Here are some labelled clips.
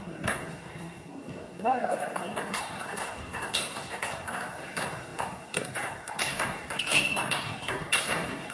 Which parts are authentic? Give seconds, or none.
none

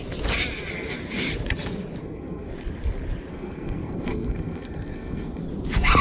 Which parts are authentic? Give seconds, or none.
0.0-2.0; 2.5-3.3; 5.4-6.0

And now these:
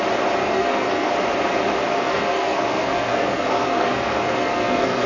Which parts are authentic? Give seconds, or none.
0.0-0.4; 1.1-1.9

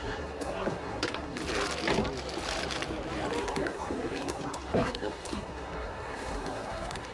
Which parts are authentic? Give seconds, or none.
1.4-3.4

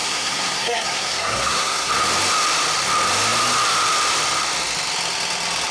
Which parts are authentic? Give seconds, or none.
1.9-5.7